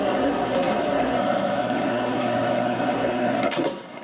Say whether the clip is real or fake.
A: fake